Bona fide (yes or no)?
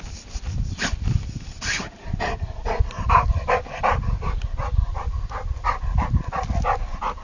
yes